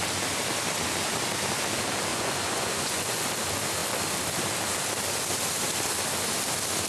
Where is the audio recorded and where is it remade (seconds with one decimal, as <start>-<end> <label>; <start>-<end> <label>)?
0.0-2.1 recorded; 2.1-3.3 remade; 3.3-6.9 recorded